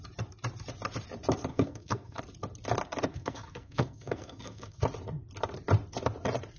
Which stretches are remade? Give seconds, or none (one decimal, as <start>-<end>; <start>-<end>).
1.5-2.2; 3.1-4.8